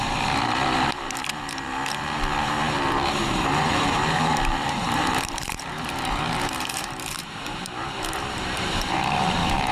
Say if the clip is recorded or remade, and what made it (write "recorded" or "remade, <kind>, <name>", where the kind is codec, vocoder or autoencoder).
remade, vocoder, BigVGAN v2